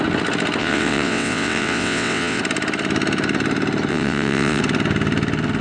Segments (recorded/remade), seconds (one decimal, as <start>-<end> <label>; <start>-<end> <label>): 0.0-0.6 recorded; 0.6-2.4 remade; 2.4-3.9 recorded; 3.9-4.6 remade; 4.6-5.6 recorded